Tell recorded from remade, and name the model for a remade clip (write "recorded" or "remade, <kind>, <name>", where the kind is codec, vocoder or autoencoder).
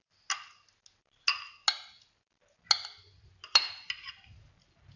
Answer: recorded